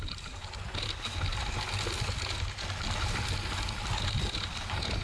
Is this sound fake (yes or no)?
no